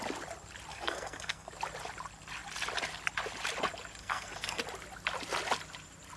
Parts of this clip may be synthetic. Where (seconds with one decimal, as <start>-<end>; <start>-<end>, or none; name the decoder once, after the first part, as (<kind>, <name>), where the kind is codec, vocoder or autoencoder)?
0.7-1.5 (codec, SNAC); 4.0-4.6